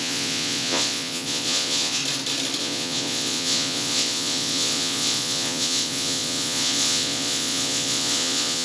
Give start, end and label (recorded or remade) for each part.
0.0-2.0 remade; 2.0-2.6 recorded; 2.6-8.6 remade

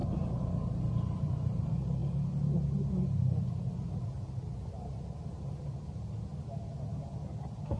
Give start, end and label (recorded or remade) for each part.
0.0-7.8 recorded